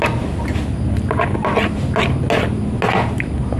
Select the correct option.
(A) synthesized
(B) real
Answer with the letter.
B